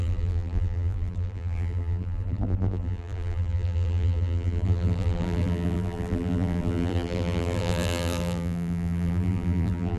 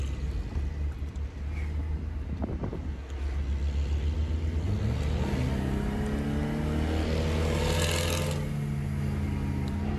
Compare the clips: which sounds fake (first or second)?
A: first